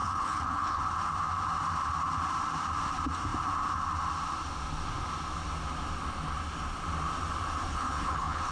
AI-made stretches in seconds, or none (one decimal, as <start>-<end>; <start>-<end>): 0.0-0.8; 7.7-8.5